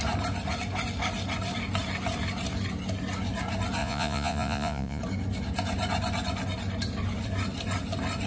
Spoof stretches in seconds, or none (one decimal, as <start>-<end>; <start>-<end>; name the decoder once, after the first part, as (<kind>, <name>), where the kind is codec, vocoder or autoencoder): 3.8-5.0 (vocoder, Vocos)